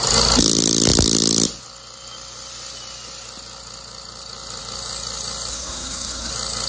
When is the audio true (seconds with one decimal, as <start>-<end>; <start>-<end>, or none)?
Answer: 0.0-5.5; 6.3-6.7